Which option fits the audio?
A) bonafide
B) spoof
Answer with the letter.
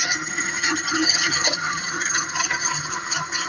B